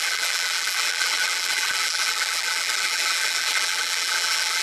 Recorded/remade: remade